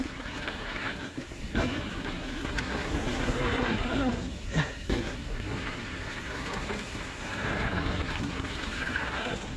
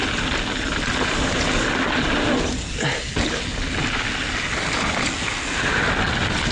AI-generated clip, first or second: first